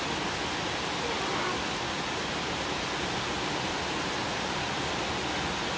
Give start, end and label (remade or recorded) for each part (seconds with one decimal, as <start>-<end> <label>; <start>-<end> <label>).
0.0-5.8 recorded